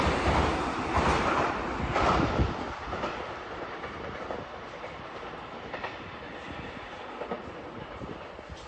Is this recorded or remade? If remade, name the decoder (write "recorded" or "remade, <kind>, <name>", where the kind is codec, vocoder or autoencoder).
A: remade, vocoder, BigVGAN v2